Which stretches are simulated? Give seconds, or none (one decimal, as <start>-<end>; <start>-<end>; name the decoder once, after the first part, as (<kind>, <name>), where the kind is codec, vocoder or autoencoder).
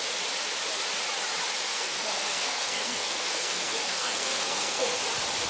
1.7-5.0 (codec, SNAC)